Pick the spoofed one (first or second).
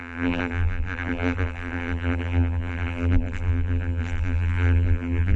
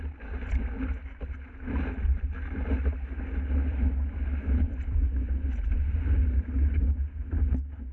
first